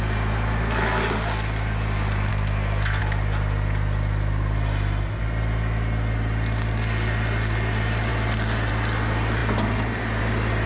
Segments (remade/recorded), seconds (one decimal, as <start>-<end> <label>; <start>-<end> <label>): 0.0-2.3 recorded; 2.3-3.0 remade; 3.0-10.7 recorded